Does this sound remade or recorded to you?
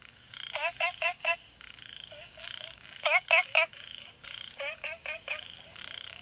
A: remade